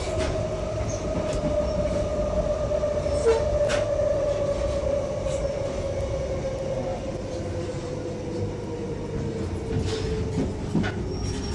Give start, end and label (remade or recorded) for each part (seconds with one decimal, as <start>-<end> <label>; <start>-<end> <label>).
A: 0.0-11.5 recorded